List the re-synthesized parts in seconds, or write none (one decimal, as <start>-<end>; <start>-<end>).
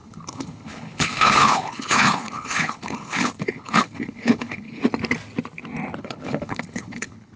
0.0-4.8; 6.0-7.4